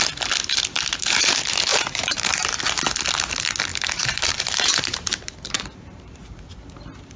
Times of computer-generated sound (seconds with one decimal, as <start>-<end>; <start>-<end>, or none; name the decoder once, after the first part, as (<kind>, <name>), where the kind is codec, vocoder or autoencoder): 1.7-2.6 (vocoder, BigVGAN v2); 3.7-6.2